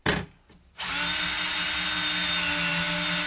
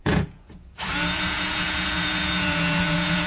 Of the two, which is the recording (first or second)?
first